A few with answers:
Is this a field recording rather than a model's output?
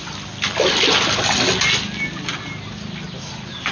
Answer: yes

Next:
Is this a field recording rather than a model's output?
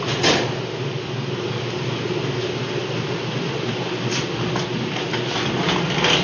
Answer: yes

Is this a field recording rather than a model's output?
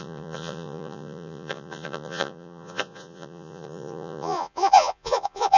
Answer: no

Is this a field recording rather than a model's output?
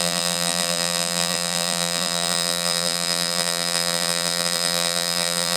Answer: no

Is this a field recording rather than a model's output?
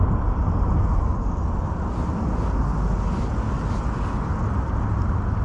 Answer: yes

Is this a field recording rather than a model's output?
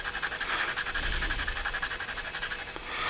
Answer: yes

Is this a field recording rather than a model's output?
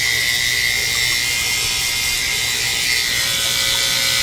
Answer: yes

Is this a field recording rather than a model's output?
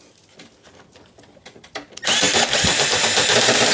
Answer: yes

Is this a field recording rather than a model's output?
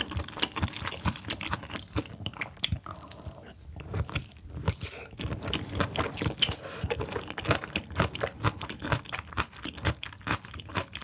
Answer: yes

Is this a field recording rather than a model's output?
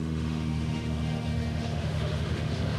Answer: no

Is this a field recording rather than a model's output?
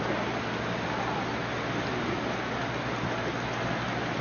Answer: yes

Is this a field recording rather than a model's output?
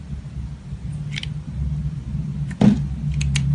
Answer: yes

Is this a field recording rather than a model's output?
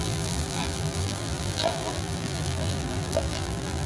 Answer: no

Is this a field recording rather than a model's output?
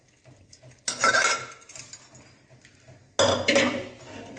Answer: yes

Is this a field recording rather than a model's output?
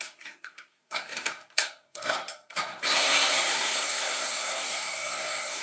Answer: no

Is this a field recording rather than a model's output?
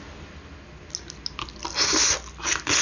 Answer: yes